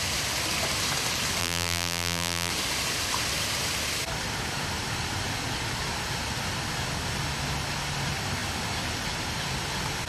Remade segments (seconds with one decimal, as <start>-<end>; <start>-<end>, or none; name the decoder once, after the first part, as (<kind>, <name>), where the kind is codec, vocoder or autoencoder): 1.4-2.5 (vocoder, BigVGAN v2)